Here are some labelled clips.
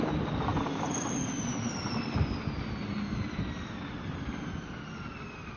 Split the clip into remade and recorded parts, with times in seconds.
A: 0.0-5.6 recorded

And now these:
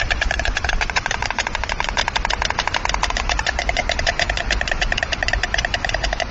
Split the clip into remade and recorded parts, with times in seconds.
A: 0.0-2.0 remade; 2.0-3.1 recorded; 3.1-6.3 remade

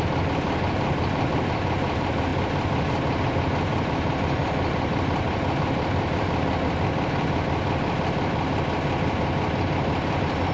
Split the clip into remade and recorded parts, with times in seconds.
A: 0.0-10.5 recorded

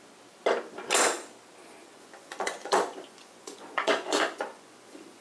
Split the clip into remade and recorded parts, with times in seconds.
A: 0.0-1.8 recorded; 1.8-5.2 remade

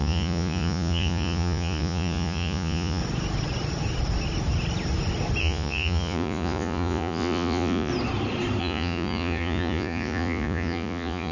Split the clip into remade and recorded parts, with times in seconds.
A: 0.0-3.0 remade; 3.0-5.4 recorded; 5.4-7.9 remade; 7.9-8.6 recorded; 8.6-11.3 remade

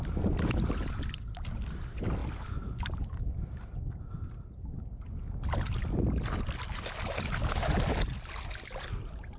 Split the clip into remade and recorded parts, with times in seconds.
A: 0.0-9.4 recorded